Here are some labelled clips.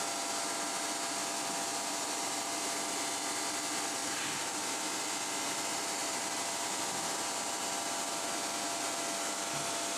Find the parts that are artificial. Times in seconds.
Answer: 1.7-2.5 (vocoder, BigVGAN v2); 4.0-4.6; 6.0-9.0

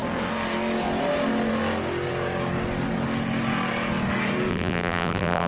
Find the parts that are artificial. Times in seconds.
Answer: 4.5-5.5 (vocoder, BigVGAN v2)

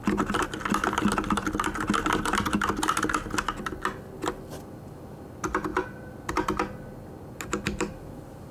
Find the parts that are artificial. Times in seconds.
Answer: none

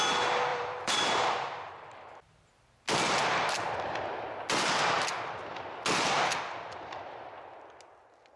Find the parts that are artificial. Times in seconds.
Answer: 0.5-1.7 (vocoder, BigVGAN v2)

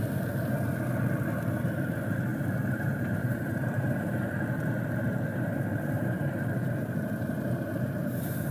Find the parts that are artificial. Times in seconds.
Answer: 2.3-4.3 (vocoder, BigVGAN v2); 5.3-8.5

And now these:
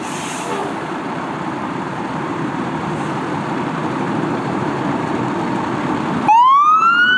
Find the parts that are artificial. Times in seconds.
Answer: 0.6-4.9 (vocoder, BigVGAN v2)

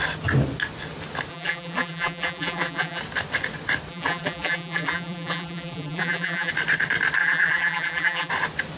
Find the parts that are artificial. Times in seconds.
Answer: 1.3-3.0 (vocoder, BigVGAN v2); 3.9-6.5; 7.2-8.3